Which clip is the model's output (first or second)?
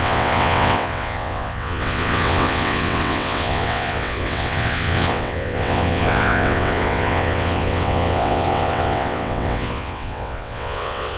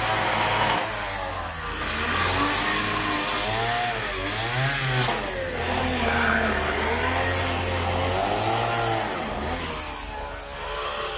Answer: first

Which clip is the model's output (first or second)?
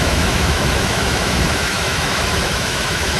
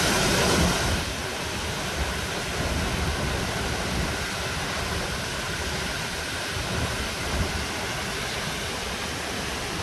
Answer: first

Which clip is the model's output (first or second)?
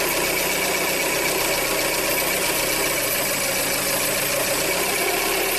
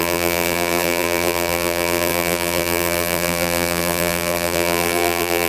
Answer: second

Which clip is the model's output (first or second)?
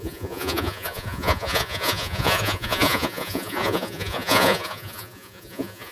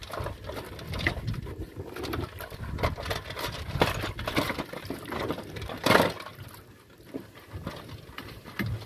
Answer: first